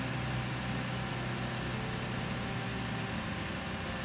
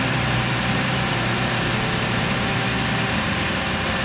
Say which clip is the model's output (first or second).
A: second